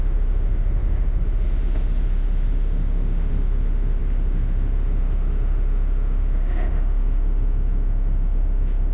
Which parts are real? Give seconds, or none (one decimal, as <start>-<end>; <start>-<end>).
none